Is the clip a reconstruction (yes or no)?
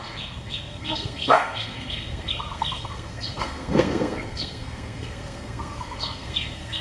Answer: yes